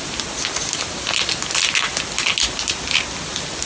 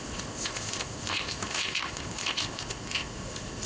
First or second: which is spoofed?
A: second